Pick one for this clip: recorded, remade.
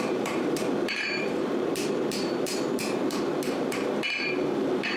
remade